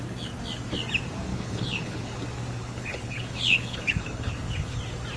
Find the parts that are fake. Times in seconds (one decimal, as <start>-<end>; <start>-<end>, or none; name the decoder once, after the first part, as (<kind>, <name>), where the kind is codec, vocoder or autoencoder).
1.3-2.2 (codec, HILCodec); 2.6-4.8